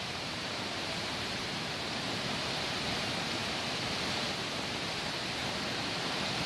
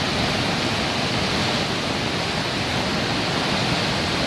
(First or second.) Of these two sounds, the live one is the second